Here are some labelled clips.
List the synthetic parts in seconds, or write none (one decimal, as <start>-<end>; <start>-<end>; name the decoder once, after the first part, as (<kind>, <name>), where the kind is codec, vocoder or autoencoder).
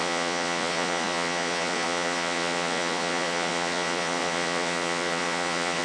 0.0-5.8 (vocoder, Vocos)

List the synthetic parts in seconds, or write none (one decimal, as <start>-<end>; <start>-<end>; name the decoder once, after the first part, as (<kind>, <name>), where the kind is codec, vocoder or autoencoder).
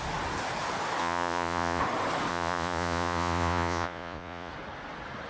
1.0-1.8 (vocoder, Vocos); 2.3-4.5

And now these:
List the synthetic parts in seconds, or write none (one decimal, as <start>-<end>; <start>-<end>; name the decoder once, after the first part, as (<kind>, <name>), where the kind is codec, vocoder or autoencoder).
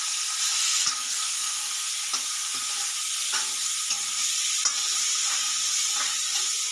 0.6-1.9 (codec, SNAC)